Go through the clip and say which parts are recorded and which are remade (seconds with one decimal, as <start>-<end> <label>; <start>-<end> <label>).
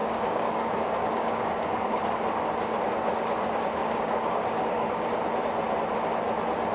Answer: 0.0-2.0 remade; 2.0-3.8 recorded; 3.8-4.9 remade; 4.9-6.7 recorded